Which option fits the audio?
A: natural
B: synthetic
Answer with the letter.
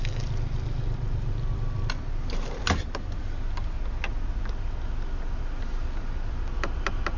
A